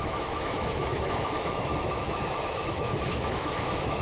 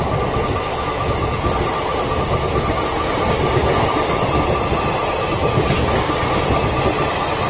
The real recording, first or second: second